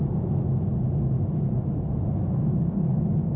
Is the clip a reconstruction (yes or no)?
no